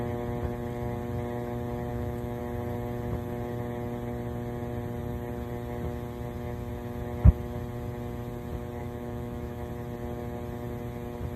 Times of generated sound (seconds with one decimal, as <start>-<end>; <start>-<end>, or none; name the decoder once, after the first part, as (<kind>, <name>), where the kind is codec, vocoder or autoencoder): 1.9-2.4 (autoencoder, DAC-VAE); 8.8-9.7